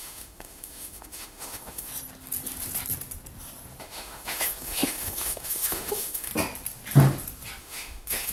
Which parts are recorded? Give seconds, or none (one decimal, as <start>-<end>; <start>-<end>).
1.9-3.8; 6.3-7.6